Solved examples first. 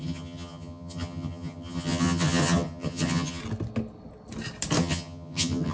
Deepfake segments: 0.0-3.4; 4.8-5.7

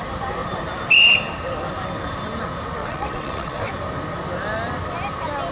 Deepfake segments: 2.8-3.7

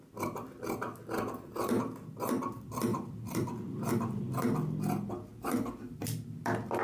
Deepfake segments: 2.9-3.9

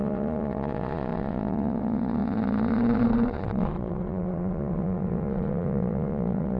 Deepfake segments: 0.0-6.6

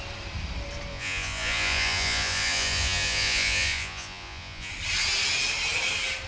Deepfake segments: 0.9-4.7

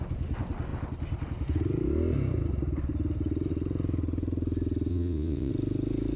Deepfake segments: 4.9-5.5

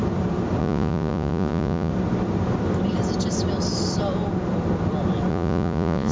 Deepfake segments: 0.6-1.9; 5.3-6.1